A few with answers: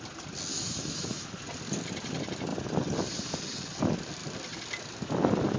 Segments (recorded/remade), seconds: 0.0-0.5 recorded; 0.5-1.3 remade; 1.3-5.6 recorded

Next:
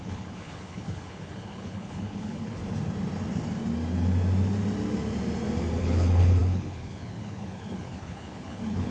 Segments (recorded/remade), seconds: 0.0-2.6 remade; 2.6-5.8 recorded; 5.8-8.9 remade

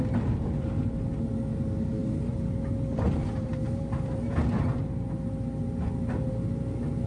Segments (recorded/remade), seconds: 0.0-7.1 recorded

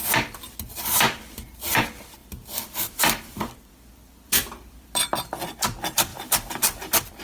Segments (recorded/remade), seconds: 0.0-0.8 recorded; 0.8-7.2 remade

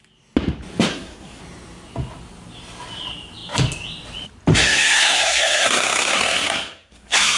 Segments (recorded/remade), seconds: 0.0-0.9 recorded; 0.9-1.4 remade; 1.4-4.5 recorded; 4.5-7.4 remade